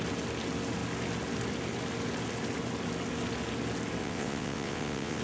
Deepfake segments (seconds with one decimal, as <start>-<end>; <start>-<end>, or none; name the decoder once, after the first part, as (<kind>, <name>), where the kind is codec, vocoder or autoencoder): 4.0-5.2 (vocoder, WaveNeXt)